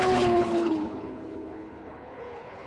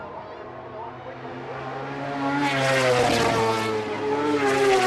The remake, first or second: first